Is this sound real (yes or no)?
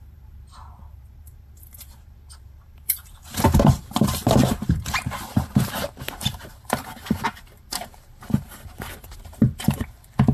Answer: no